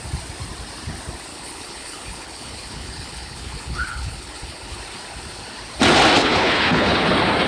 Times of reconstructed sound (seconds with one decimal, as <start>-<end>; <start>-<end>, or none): 1.3-4.8; 6.2-7.1